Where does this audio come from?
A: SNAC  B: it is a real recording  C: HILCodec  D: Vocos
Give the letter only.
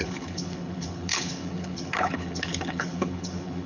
C